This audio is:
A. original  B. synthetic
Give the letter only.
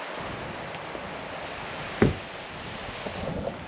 A